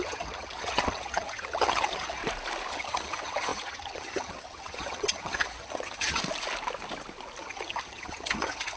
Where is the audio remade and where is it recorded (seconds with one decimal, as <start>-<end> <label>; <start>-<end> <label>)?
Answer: 0.0-2.2 remade; 2.2-2.7 recorded; 2.7-6.2 remade; 6.2-7.4 recorded; 7.4-8.8 remade